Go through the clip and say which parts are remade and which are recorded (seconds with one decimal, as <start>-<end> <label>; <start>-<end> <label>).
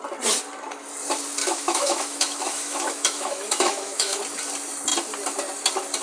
0.0-1.4 recorded; 1.4-4.2 remade; 4.2-6.0 recorded